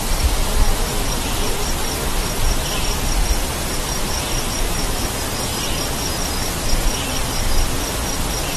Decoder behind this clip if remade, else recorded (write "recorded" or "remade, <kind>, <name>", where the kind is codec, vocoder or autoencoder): recorded